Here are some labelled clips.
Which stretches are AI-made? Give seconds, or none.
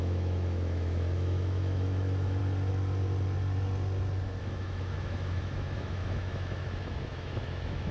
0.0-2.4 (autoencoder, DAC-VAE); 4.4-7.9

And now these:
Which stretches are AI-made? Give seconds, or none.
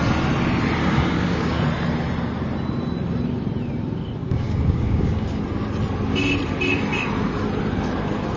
0.8-1.6 (codec, DAC); 4.2-5.4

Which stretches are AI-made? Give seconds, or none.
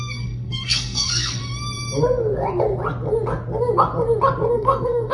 0.0-1.4 (codec, SNAC); 4.5-5.1